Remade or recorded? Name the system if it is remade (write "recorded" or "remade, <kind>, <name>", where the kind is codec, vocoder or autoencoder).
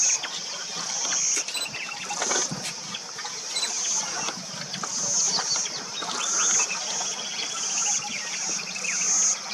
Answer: recorded